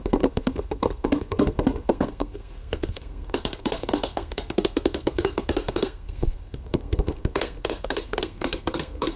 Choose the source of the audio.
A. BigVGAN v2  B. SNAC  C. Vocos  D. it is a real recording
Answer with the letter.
B